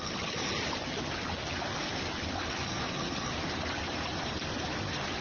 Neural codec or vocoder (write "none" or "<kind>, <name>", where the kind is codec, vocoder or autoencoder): none